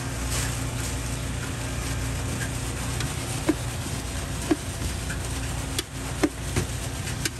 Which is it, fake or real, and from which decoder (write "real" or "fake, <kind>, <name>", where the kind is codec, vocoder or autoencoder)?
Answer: real